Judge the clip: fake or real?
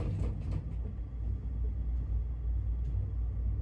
real